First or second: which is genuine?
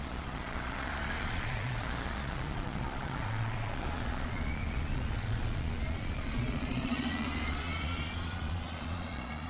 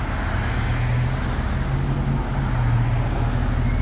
second